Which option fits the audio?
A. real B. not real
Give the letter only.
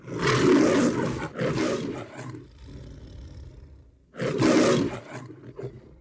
A